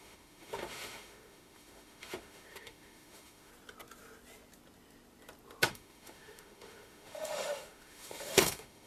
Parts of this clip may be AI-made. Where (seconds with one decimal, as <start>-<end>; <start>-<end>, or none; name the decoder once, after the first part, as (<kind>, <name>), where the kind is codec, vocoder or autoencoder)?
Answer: 0.0-3.5 (autoencoder, DAC-VAE); 5.7-8.9